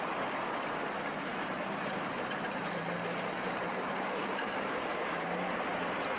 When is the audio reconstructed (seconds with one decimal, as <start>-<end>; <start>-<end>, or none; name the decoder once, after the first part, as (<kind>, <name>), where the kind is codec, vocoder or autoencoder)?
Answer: 1.3-5.0 (vocoder, BigVGAN v2)